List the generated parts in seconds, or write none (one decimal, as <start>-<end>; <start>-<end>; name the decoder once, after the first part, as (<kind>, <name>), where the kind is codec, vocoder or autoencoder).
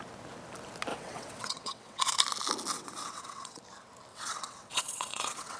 0.9-2.1 (vocoder, WaveNeXt); 2.7-3.6; 4.1-5.6